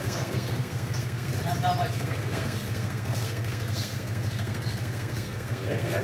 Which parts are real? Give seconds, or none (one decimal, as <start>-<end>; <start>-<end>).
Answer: 1.3-1.9